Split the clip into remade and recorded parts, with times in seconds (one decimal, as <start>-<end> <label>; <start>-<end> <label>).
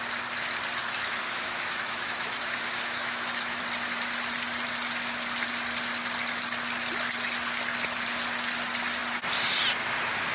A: 0.0-1.0 recorded; 1.0-3.6 remade; 3.6-10.3 recorded